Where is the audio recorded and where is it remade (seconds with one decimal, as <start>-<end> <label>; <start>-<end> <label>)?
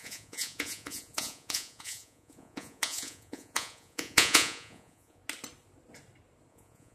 0.0-5.2 remade; 5.2-6.5 recorded; 6.5-6.9 remade